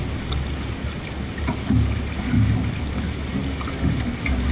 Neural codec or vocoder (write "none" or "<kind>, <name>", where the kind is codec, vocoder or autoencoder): none